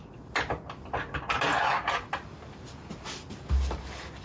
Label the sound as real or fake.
real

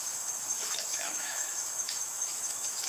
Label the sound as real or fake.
fake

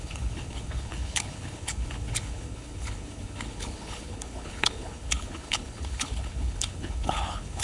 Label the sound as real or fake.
fake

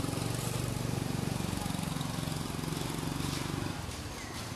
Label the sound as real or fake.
real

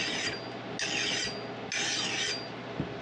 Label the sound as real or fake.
real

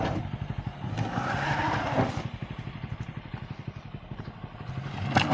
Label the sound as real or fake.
real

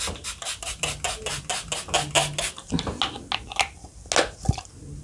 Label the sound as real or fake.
real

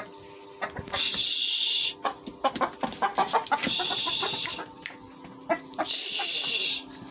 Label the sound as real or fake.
real